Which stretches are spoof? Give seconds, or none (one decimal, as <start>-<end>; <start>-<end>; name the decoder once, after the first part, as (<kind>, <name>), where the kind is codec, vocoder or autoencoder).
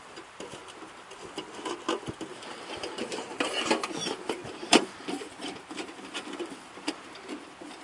2.3-3.4 (vocoder, BigVGAN v2); 4.4-6.6